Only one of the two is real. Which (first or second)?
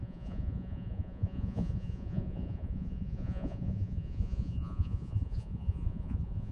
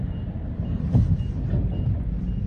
second